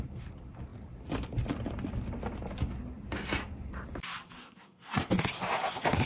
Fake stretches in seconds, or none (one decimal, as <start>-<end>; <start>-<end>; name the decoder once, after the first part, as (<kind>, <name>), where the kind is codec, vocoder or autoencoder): 4.4-5.1 (codec, SNAC)